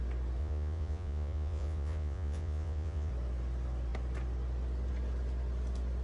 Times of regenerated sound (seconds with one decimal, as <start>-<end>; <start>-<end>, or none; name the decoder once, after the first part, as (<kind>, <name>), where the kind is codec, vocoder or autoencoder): 0.4-3.1 (vocoder, Vocos)